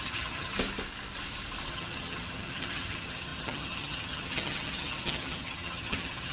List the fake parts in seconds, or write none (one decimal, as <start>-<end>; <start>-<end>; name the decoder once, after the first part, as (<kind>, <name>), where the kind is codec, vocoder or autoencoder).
0.0-0.5 (vocoder, HiFi-GAN); 1.7-6.3